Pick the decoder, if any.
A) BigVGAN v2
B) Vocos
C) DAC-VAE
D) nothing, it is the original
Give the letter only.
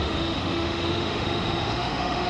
C